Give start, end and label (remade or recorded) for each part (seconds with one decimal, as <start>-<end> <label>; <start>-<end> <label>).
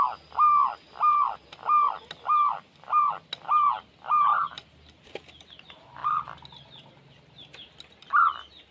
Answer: 0.0-8.7 recorded